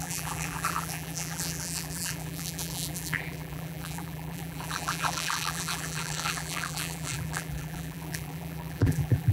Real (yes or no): no